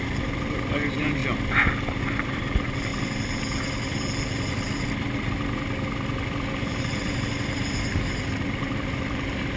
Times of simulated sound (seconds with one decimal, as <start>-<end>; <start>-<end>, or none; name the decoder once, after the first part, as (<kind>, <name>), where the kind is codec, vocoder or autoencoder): 0.0-1.2 (vocoder, BigVGAN v2); 2.0-2.9; 6.5-9.6